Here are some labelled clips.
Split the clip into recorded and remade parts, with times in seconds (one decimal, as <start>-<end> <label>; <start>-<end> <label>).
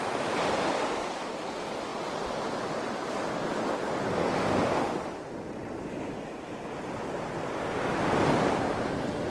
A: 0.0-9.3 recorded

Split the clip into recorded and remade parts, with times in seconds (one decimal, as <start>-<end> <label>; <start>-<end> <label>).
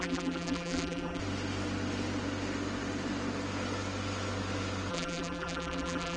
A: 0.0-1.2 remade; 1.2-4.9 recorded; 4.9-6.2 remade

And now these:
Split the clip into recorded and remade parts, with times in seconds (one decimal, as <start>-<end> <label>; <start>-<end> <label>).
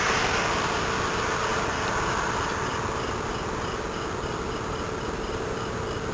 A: 0.0-6.1 recorded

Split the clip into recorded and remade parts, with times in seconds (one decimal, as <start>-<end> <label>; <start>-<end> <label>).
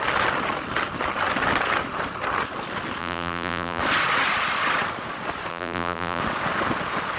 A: 0.0-3.0 recorded; 3.0-3.8 remade; 3.8-5.5 recorded; 5.5-6.2 remade; 6.2-7.2 recorded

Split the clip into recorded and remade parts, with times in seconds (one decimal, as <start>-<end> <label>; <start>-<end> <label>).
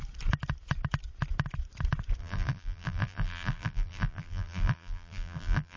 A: 0.0-2.2 recorded; 2.2-5.8 remade